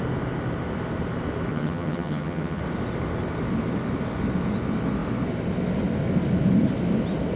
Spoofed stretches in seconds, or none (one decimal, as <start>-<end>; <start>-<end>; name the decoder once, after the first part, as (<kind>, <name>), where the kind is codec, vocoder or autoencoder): 1.5-2.6 (vocoder, HiFi-GAN)